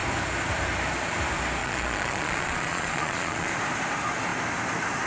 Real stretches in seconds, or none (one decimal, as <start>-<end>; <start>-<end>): 0.0-1.6; 3.5-5.1